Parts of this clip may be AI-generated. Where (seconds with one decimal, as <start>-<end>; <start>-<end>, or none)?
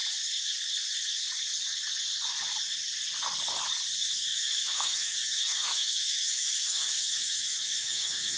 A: 4.3-8.4